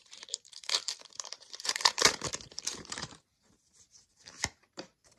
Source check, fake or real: fake